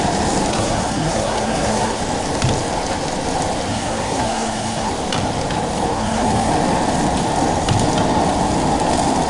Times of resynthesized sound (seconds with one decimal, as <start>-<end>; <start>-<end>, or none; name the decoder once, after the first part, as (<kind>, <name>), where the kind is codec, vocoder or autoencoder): 0.5-2.0 (codec, SNAC); 3.7-4.9; 5.9-6.5